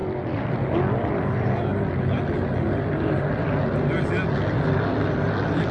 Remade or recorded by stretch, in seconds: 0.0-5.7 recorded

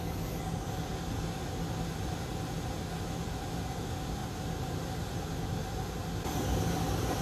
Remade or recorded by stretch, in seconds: 0.0-7.2 recorded

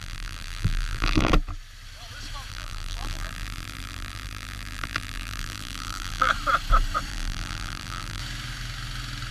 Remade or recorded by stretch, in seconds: 0.0-1.3 remade; 1.3-2.5 recorded; 2.5-6.3 remade; 6.3-7.1 recorded; 7.1-8.2 remade; 8.2-9.3 recorded

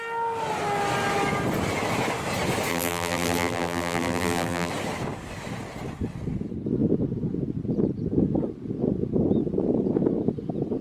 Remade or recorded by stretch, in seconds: 0.0-2.7 recorded; 2.7-4.7 remade; 4.7-10.8 recorded